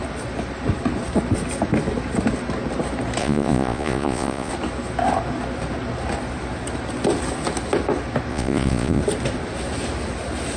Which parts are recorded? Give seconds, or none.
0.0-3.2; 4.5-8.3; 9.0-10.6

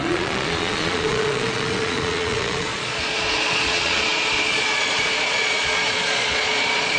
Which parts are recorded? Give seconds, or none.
none

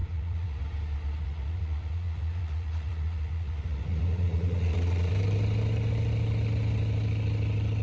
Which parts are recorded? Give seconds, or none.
0.6-1.2; 5.1-7.8